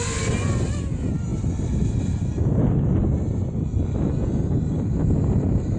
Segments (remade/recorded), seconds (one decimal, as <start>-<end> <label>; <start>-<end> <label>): 0.0-5.8 recorded